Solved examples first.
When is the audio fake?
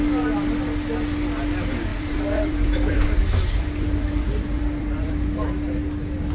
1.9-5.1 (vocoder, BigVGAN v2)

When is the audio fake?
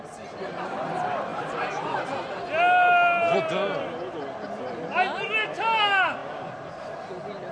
none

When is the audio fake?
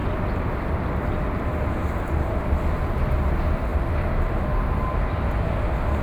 0.0-2.1 (vocoder, BigVGAN v2); 3.7-4.6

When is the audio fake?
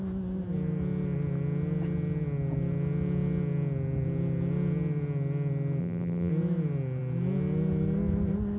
5.8-6.3 (vocoder, BigVGAN v2)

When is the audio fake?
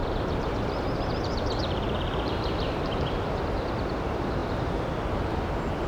0.0-5.9 (vocoder, BigVGAN v2)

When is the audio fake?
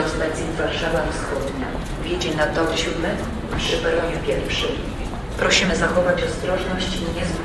2.7-3.3 (vocoder, BigVGAN v2); 3.7-5.7